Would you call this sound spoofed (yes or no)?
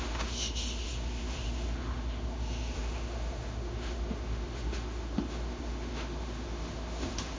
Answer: yes